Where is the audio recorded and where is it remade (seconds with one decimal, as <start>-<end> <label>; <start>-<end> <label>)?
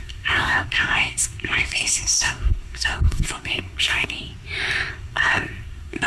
0.0-4.3 remade; 4.3-4.9 recorded; 4.9-6.1 remade